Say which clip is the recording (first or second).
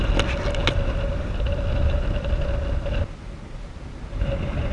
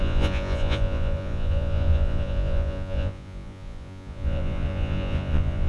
first